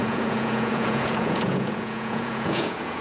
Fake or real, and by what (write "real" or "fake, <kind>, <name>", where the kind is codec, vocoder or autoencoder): fake, vocoder, Vocos